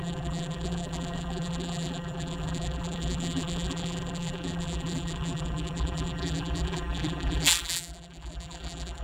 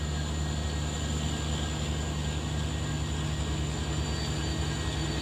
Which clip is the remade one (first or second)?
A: first